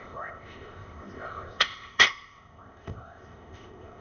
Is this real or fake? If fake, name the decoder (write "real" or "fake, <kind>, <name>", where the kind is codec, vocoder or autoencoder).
fake, codec, ZipCodec